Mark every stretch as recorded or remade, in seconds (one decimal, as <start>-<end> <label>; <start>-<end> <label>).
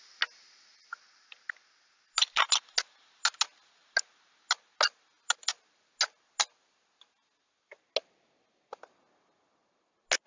0.0-10.3 recorded